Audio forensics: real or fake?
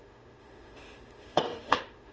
fake